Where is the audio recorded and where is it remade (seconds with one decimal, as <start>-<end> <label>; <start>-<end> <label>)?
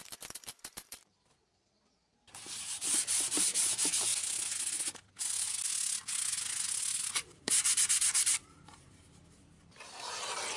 0.0-4.1 remade; 4.1-7.1 recorded; 7.1-10.6 remade